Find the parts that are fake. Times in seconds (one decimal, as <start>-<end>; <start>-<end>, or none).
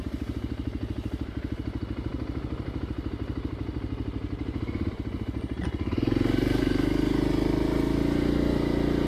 none